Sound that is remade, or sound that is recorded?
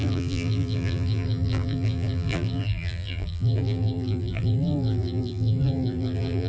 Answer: remade